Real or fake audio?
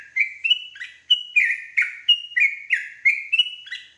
real